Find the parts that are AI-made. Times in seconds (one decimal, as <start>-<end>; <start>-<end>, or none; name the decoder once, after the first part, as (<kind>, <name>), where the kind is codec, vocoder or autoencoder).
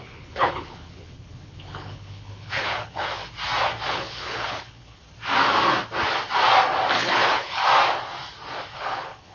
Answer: 0.0-3.2 (codec, HILCodec); 3.9-5.0; 7.1-7.6; 8.7-9.3